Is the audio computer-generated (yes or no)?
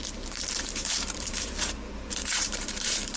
yes